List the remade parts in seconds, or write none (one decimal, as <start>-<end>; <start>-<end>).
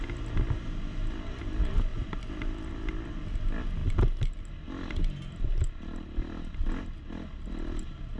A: 1.9-2.7